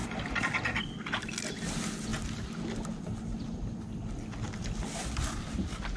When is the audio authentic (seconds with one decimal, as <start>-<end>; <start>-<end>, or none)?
0.0-6.0